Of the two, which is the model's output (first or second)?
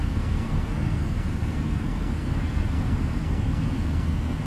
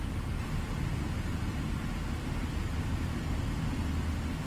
first